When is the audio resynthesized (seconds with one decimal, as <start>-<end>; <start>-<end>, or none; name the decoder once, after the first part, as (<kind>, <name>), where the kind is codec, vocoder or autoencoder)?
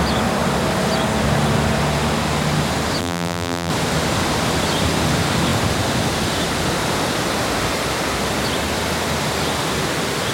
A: 3.0-3.7 (vocoder, BigVGAN v2)